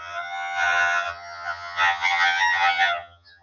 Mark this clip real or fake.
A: fake